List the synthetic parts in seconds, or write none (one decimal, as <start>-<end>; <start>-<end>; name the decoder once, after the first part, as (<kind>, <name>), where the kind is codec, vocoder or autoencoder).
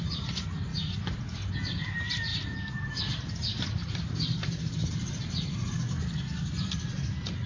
2.3-3.7 (vocoder, BigVGAN v2)